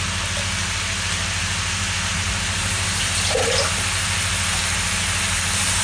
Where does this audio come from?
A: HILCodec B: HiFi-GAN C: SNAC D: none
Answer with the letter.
D